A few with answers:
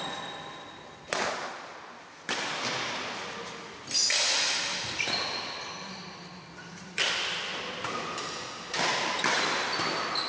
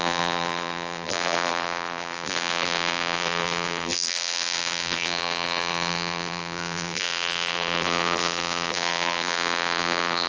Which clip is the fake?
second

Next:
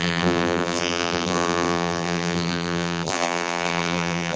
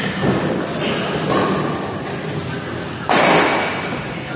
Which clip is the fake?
first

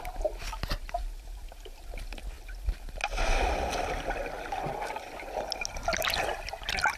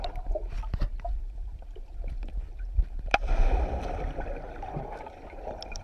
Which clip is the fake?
second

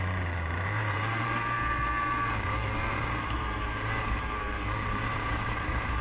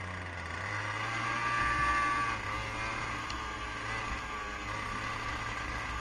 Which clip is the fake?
first